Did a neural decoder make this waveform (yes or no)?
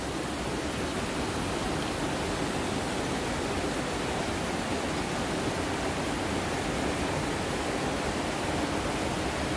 no